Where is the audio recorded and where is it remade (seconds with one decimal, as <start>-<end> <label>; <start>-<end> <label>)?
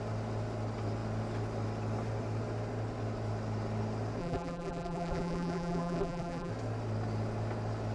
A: 0.0-4.2 recorded; 4.2-6.5 remade; 6.5-7.9 recorded